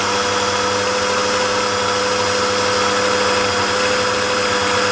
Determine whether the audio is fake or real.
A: real